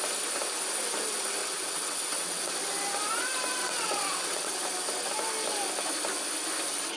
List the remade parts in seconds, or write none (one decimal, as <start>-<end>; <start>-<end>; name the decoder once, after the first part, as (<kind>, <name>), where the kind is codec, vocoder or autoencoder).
1.4-2.5 (vocoder, WaveNeXt); 3.6-4.5